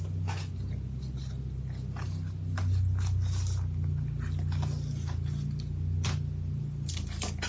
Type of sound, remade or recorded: recorded